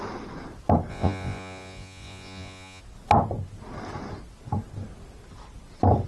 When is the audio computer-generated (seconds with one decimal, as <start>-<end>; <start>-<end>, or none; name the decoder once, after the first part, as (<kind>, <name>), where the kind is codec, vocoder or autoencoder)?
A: 0.9-2.8 (vocoder, Vocos)